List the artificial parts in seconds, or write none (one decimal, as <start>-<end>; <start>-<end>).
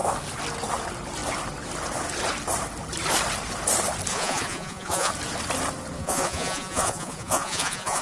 4.1-5.1; 6.0-8.0